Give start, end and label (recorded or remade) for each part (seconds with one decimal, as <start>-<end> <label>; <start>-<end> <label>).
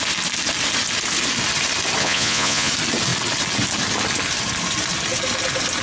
0.0-2.0 recorded; 2.0-2.7 remade; 2.7-5.8 recorded